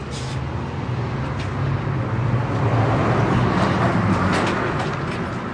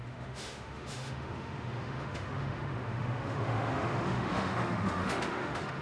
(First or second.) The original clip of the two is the first